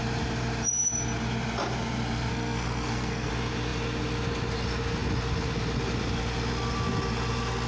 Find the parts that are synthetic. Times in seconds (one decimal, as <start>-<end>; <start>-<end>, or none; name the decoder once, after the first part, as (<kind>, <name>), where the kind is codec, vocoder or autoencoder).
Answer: 2.3-3.3 (codec, SNAC)